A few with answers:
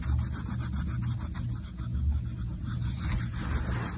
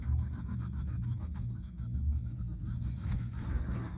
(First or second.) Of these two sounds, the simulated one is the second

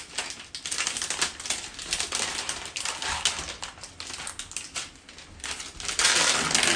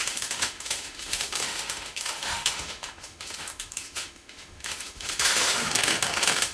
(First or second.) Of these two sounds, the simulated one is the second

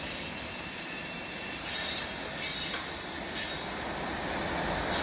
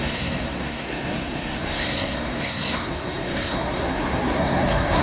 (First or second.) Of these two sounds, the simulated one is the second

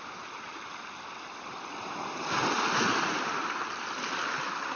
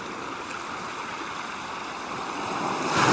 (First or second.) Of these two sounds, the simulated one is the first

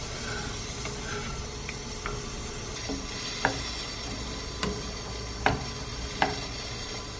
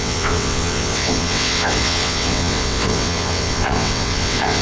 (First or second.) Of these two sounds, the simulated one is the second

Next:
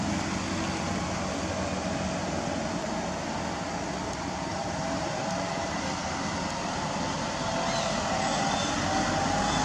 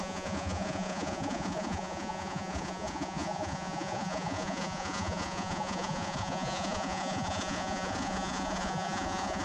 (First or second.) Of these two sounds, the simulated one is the second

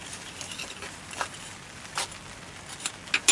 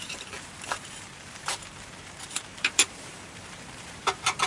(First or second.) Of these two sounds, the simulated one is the second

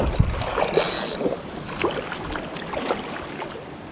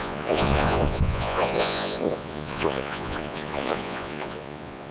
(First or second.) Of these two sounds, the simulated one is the second